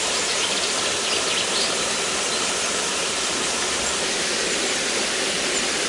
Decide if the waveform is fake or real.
fake